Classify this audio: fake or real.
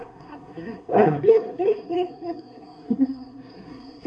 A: fake